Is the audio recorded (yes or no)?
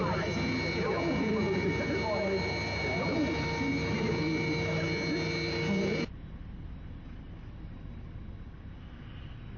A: yes